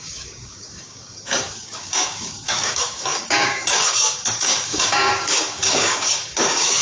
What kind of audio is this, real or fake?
fake